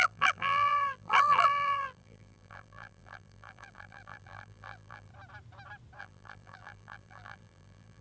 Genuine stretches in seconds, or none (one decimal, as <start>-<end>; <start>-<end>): 5.1-6.0